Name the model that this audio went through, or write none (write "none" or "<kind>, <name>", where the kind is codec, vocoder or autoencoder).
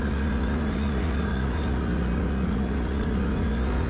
vocoder, Vocos